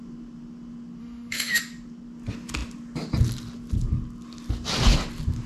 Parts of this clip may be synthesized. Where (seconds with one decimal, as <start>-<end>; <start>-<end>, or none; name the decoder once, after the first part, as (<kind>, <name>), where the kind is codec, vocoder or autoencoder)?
1.0-1.6 (autoencoder, DAC-VAE)